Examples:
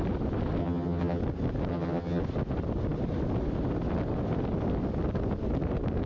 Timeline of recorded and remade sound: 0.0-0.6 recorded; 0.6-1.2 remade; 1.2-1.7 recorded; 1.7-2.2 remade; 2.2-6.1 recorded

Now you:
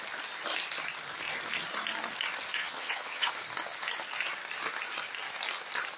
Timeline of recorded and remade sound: 0.0-2.6 recorded; 2.6-3.3 remade; 3.3-6.0 recorded

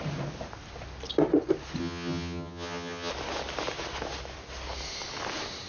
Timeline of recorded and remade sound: 0.0-1.8 recorded; 1.8-3.1 remade; 3.1-5.7 recorded

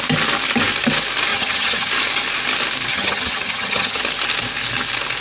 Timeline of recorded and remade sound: 0.0-1.3 recorded; 1.3-1.9 remade; 1.9-2.9 recorded; 2.9-4.0 remade; 4.0-5.2 recorded

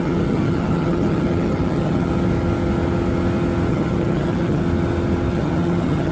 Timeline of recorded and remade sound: 0.0-2.1 remade; 2.1-3.7 recorded; 3.7-4.6 remade; 4.6-5.3 recorded; 5.3-6.1 remade

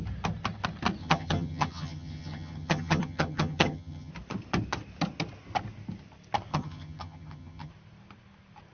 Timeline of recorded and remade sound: 0.0-1.0 recorded; 1.0-4.1 remade; 4.1-6.5 recorded; 6.5-7.7 remade; 7.7-8.7 recorded